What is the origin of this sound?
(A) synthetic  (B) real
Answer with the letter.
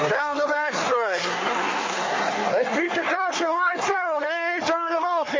A